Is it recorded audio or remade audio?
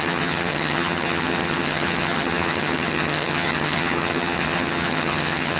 remade